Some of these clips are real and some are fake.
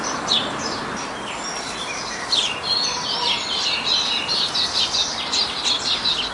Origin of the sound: fake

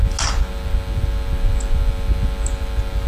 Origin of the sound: real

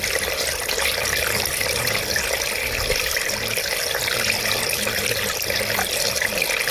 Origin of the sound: fake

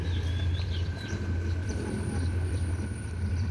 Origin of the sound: fake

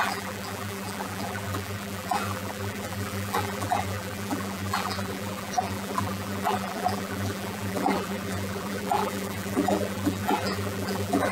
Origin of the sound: fake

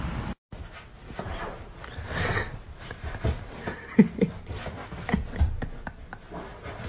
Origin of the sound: real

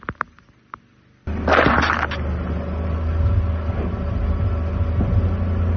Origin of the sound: real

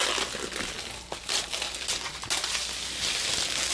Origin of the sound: real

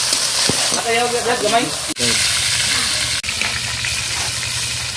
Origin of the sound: real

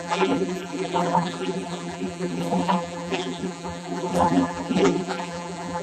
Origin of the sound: fake